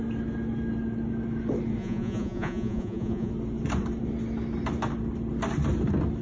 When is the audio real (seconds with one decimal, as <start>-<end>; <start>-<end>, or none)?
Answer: 0.0-1.8; 3.3-6.2